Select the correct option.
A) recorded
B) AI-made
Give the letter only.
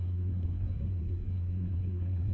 B